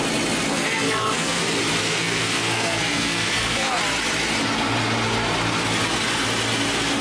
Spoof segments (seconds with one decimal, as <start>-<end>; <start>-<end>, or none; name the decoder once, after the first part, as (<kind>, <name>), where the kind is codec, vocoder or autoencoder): 0.5-1.4 (codec, SNAC); 1.8-3.8